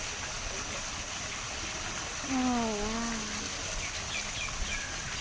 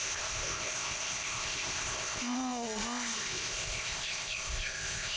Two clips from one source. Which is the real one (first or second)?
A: first